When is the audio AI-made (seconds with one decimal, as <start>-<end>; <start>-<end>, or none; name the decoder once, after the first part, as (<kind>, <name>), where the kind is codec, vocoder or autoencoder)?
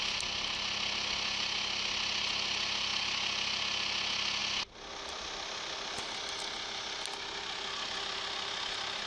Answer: none